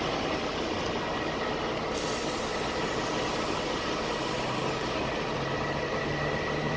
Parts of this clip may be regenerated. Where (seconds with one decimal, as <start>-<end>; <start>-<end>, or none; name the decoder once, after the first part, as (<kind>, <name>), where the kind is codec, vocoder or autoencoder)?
2.5-3.5 (vocoder, BigVGAN v2)